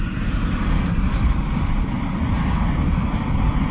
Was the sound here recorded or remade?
recorded